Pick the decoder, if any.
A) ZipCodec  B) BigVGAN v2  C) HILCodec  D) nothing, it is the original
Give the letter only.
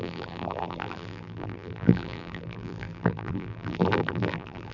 B